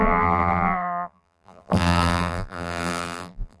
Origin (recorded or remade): remade